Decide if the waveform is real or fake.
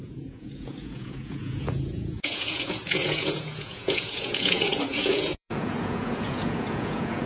fake